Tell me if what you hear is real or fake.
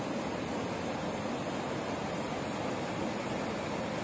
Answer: real